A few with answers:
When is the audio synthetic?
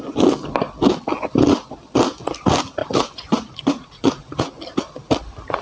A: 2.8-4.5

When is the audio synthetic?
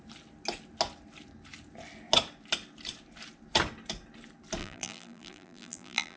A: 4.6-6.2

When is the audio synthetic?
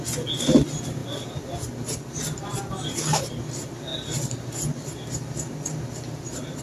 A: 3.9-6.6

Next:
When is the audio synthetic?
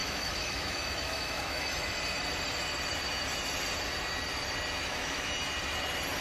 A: 0.0-1.9; 4.8-5.3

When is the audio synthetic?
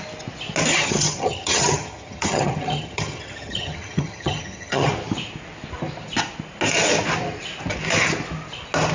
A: 0.7-4.9